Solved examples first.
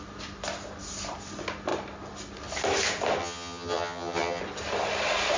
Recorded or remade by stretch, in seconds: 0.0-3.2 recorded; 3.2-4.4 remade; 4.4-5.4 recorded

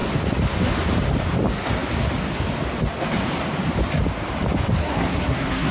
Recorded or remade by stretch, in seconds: 0.0-4.8 recorded; 4.8-5.7 remade

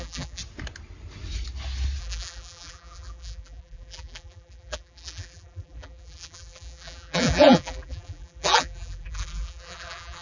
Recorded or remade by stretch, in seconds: 0.0-0.4 remade; 0.4-2.0 recorded; 2.0-10.2 remade